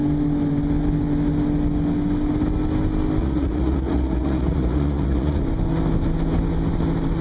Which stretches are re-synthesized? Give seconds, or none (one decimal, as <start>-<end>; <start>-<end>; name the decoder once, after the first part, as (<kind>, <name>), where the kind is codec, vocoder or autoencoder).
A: 3.2-5.4 (vocoder, Vocos)